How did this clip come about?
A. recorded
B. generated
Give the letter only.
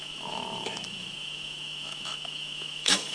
B